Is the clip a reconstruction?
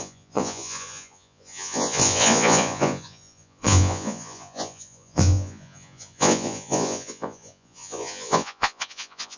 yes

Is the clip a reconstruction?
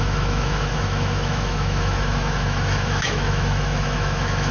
yes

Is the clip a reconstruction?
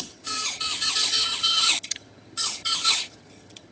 yes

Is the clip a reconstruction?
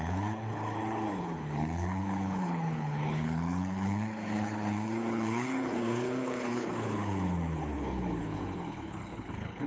yes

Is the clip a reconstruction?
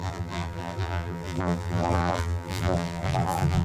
yes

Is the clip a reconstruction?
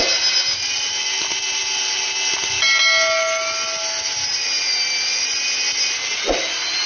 no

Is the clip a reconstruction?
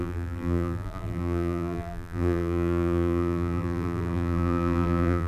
yes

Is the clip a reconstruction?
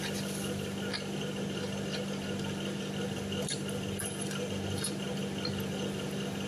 no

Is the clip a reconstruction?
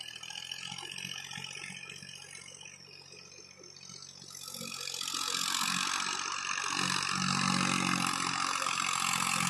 no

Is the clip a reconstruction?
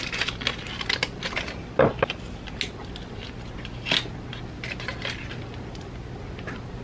no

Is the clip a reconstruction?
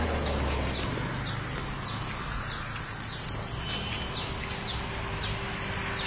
no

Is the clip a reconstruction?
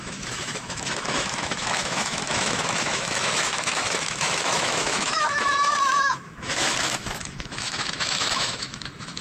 yes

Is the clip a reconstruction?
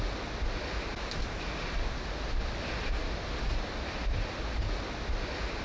no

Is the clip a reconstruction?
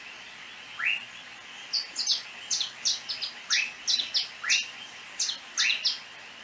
no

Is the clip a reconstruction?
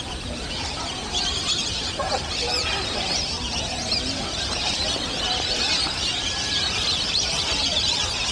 yes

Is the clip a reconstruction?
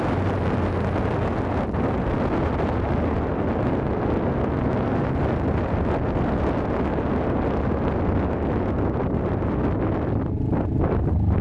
no